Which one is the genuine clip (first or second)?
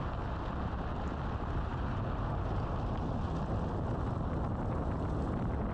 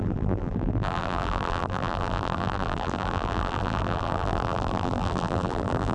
first